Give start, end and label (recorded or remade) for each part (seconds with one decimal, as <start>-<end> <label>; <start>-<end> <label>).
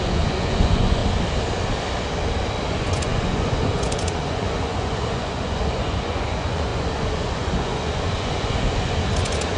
0.0-1.0 remade; 1.0-2.7 recorded; 2.7-9.6 remade